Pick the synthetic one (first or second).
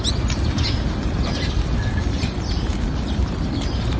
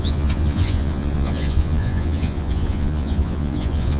second